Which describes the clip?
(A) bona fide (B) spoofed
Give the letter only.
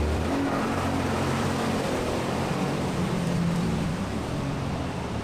B